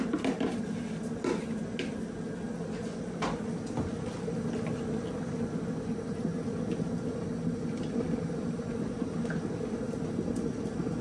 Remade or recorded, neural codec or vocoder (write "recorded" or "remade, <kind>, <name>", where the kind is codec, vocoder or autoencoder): recorded